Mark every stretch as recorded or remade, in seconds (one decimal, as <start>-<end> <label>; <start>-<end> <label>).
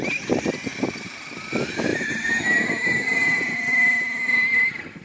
0.0-5.0 recorded